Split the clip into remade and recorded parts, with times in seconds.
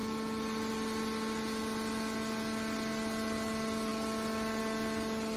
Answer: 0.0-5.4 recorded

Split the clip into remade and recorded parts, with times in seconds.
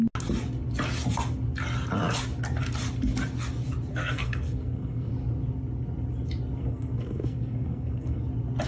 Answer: 0.0-3.9 recorded; 3.9-5.1 remade; 5.1-6.6 recorded; 6.6-8.2 remade; 8.2-8.7 recorded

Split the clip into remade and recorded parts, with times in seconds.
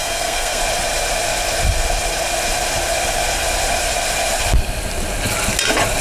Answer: 0.0-0.6 remade; 0.6-6.0 recorded